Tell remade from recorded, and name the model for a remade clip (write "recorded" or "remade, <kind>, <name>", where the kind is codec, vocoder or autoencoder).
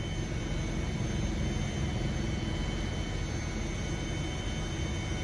recorded